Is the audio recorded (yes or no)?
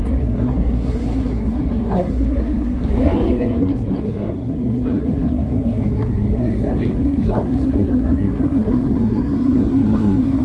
no